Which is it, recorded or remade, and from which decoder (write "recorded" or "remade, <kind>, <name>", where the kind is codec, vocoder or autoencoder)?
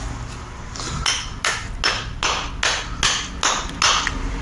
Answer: recorded